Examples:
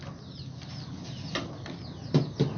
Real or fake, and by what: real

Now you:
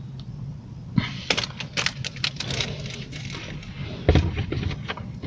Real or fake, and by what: real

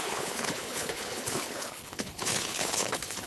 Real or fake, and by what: fake, codec, HILCodec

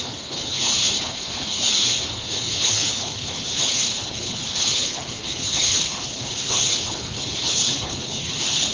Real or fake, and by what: fake, codec, HILCodec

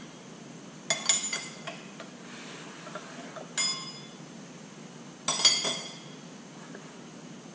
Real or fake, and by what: real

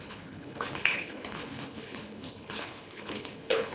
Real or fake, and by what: fake, codec, HILCodec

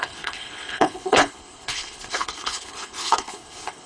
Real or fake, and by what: fake, codec, HILCodec